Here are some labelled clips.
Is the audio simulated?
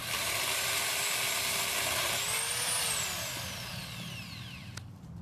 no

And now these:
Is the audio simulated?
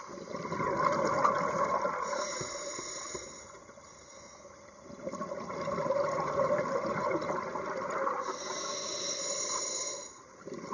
no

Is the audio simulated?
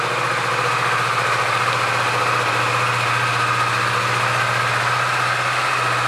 no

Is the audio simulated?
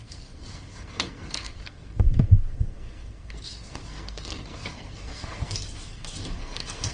yes